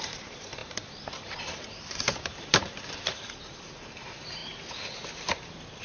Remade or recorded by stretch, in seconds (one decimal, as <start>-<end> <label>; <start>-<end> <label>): 0.0-4.4 remade; 4.4-5.8 recorded